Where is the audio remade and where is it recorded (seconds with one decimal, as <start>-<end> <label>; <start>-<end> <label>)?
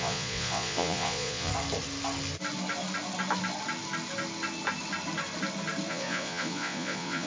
0.0-1.5 remade; 1.5-5.9 recorded; 5.9-7.3 remade